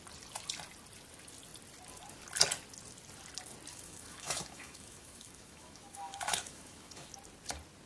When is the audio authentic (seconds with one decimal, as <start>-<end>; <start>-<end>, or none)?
0.0-3.7; 7.1-7.9